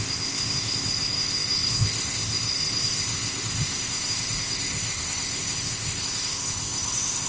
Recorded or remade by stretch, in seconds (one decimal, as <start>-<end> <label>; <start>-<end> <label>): 0.0-7.3 remade